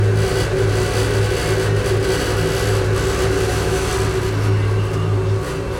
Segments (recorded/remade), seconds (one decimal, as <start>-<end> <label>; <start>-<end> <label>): 0.0-3.5 recorded; 3.5-3.9 remade; 3.9-5.8 recorded